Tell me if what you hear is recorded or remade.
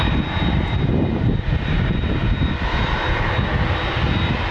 recorded